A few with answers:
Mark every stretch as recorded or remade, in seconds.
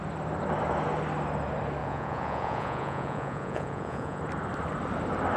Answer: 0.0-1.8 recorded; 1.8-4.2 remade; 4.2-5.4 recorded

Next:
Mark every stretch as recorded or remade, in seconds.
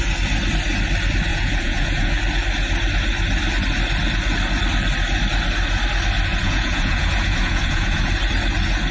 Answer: 0.0-1.3 recorded; 1.3-2.1 remade; 2.1-6.3 recorded; 6.3-8.1 remade; 8.1-8.9 recorded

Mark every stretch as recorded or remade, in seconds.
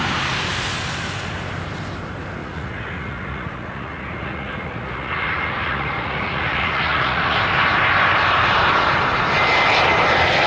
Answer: 0.0-2.4 recorded; 2.4-7.4 remade; 7.4-10.5 recorded